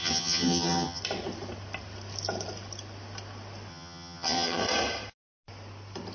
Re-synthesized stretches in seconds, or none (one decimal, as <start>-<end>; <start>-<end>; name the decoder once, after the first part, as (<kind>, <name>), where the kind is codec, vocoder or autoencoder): 0.0-1.0 (vocoder, HiFi-GAN); 3.7-4.6